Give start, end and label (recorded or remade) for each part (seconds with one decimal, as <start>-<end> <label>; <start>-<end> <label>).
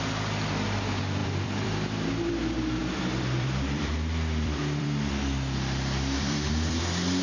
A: 0.0-1.2 recorded; 1.2-2.3 remade; 2.3-2.8 recorded; 2.8-6.8 remade; 6.8-7.2 recorded